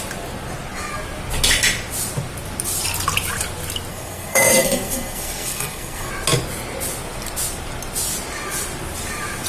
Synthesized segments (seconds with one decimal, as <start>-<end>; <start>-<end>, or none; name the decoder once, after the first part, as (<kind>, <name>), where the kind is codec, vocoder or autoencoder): 3.9-6.1 (codec, SNAC)

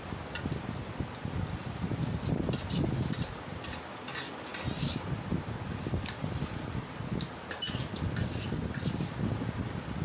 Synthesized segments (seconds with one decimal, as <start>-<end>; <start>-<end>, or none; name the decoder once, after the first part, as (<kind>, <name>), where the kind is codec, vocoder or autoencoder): none

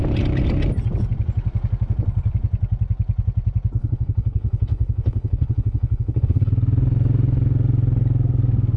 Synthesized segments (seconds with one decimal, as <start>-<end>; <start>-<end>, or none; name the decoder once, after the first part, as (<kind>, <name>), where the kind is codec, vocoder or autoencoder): 3.8-6.5 (codec, HILCodec)